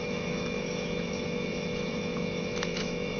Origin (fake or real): fake